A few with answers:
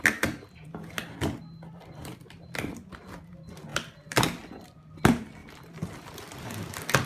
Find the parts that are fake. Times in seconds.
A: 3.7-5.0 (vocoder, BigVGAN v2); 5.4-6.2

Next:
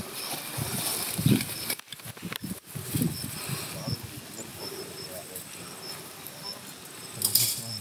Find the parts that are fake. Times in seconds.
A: 4.5-5.5 (vocoder, BigVGAN v2)

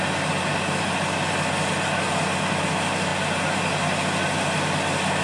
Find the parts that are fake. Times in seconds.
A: none